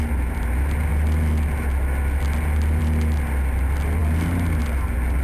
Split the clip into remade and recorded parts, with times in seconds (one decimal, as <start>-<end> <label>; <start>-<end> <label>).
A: 0.0-5.2 recorded